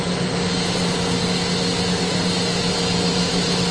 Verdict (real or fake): real